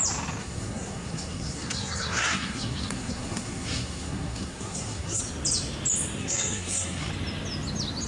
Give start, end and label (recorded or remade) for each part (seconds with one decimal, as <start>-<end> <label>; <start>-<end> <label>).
0.0-0.4 recorded; 0.4-5.2 remade; 5.2-6.2 recorded; 6.2-7.1 remade; 7.1-8.1 recorded